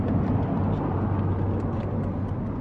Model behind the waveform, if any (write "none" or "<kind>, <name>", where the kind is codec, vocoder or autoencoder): none